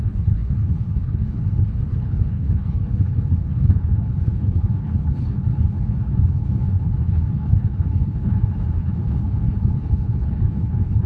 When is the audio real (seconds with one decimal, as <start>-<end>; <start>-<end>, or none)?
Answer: none